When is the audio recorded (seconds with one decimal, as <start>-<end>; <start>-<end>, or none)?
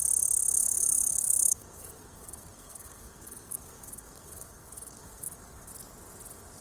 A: 5.7-6.6